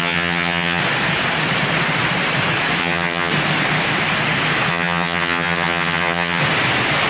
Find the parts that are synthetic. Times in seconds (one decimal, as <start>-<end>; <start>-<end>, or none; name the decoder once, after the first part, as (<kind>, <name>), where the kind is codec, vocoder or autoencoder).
0.0-0.8 (vocoder, HiFi-GAN); 2.8-3.3; 4.7-6.4